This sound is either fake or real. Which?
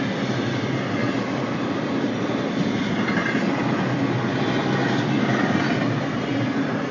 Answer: real